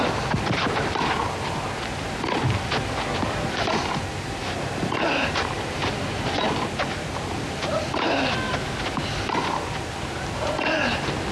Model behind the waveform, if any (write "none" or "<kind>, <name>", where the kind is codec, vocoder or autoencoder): none